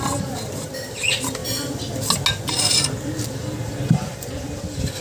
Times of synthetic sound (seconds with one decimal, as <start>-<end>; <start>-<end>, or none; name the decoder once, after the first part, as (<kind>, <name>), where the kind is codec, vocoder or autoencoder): none